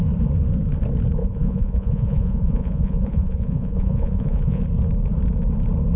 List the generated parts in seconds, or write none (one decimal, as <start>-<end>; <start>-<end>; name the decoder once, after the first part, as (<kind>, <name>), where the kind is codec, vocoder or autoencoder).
1.2-4.6 (vocoder, Vocos)